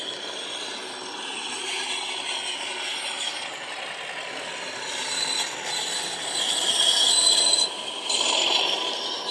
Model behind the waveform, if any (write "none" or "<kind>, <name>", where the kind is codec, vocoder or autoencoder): none